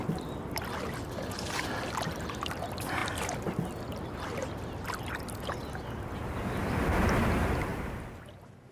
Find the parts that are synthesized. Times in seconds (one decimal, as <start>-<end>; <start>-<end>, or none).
none